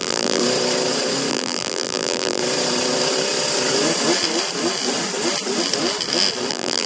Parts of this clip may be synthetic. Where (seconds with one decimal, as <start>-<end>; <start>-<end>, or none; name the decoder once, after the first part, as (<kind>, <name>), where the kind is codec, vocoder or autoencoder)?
0.0-0.4 (vocoder, BigVGAN v2); 1.3-2.4; 6.5-6.9